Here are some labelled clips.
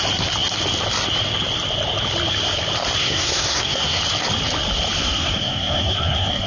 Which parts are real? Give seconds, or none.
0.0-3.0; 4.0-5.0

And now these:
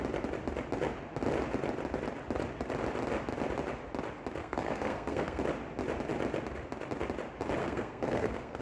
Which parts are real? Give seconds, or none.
0.0-4.4; 5.4-7.6

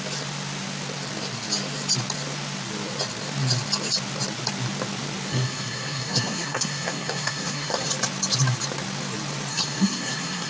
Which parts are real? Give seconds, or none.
0.0-5.3; 7.9-9.5

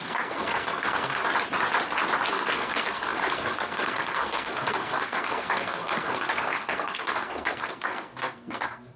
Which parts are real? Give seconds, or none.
1.2-2.3

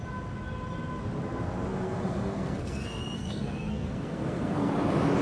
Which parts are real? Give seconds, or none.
0.0-1.7; 4.7-5.2